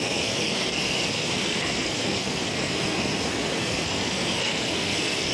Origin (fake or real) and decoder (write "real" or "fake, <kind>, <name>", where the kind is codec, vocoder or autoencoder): fake, codec, SNAC